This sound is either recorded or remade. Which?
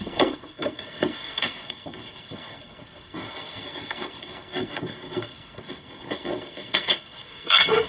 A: remade